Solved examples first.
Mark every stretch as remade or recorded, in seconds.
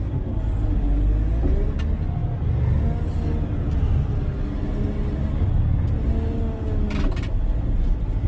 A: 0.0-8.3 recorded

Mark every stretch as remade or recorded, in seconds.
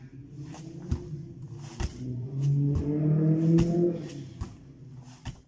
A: 0.0-1.9 recorded; 1.9-3.0 remade; 3.0-5.5 recorded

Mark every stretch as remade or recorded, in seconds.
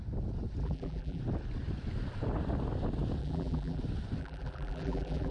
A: 0.0-0.6 recorded; 0.6-1.2 remade; 1.2-3.2 recorded; 3.2-3.8 remade; 3.8-4.2 recorded; 4.2-5.3 remade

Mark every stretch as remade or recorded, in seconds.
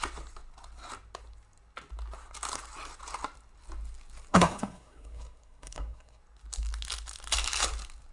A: 0.0-4.3 recorded; 4.3-6.2 remade; 6.2-8.1 recorded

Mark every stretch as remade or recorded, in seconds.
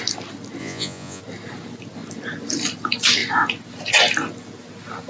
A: 0.0-0.6 recorded; 0.6-1.2 remade; 1.2-5.1 recorded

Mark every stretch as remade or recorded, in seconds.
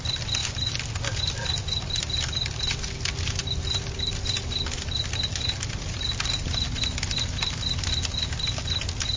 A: 0.0-9.2 recorded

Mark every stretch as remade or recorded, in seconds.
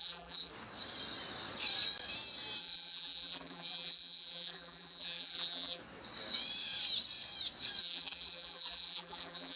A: 0.0-0.5 remade; 0.5-2.6 recorded; 2.6-5.8 remade; 5.8-7.8 recorded; 7.8-9.6 remade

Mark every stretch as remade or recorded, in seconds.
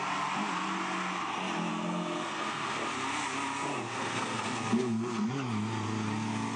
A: 0.0-1.7 recorded; 1.7-2.7 remade; 2.7-3.9 recorded; 3.9-5.3 remade; 5.3-6.6 recorded